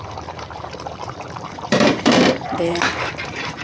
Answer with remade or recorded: remade